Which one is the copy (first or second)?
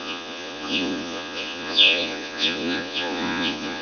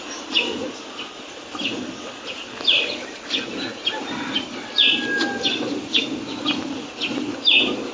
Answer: first